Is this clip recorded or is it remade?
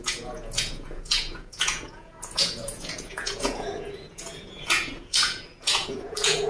remade